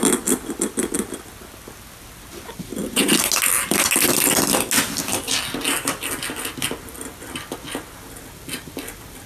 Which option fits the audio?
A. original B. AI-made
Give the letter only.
A